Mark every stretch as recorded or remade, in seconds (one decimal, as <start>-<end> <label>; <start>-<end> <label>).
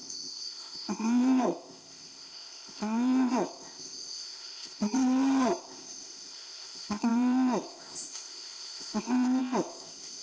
0.0-4.8 remade; 4.8-5.6 recorded; 5.6-10.2 remade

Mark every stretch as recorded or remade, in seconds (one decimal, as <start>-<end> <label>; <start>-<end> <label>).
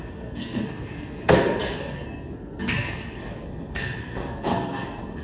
0.0-5.2 remade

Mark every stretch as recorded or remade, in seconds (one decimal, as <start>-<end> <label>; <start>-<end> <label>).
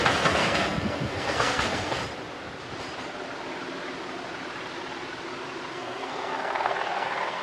0.0-2.0 remade; 2.0-5.7 recorded; 5.7-7.4 remade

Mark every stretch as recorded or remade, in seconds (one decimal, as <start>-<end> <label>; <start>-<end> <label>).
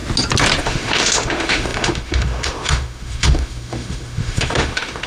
0.0-0.6 recorded; 0.6-5.1 remade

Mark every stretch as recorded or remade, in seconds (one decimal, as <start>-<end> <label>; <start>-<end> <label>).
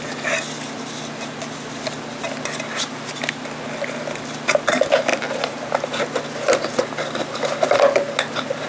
0.0-5.1 recorded; 5.1-5.6 remade; 5.6-8.7 recorded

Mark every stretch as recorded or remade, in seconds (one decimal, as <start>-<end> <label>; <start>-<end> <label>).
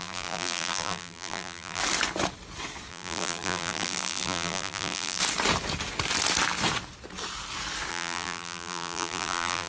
0.0-1.8 remade; 1.8-2.9 recorded; 2.9-5.2 remade; 5.2-7.9 recorded; 7.9-9.7 remade